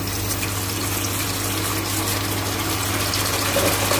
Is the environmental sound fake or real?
real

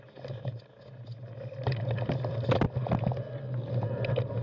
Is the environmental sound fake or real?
real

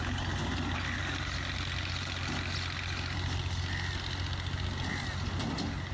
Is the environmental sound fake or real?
real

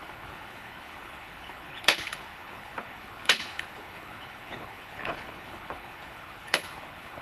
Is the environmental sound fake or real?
fake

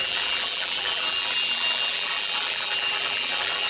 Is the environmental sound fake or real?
fake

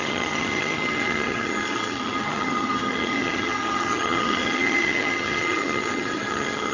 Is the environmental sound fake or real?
fake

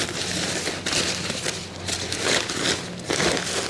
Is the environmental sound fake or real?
real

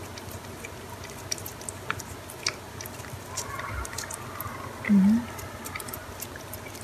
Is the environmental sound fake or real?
real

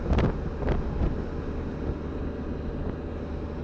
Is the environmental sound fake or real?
real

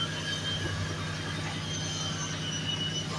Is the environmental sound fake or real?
real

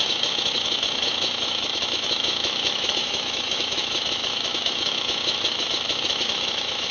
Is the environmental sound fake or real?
fake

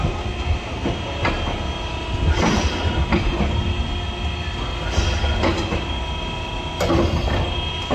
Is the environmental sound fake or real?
real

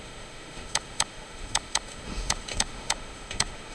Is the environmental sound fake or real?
fake